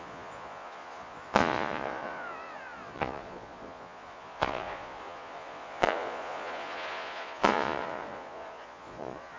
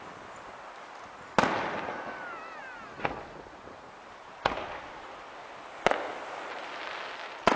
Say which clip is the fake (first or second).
first